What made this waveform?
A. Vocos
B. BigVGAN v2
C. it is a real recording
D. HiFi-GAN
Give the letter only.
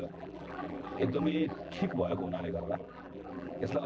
B